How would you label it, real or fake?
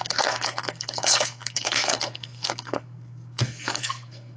fake